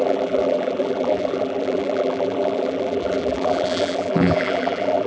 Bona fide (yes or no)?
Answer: no